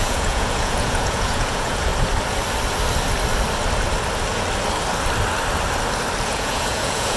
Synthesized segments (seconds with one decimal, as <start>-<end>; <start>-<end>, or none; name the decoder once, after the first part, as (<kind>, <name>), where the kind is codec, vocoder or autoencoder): 0.0-1.9 (vocoder, Vocos); 6.2-7.2

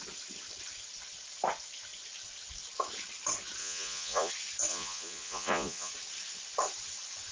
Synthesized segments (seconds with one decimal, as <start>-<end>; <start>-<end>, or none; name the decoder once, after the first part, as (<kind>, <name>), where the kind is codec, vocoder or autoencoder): 3.6-4.3 (vocoder, Vocos); 4.7-5.9